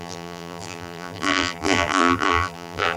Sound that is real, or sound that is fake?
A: fake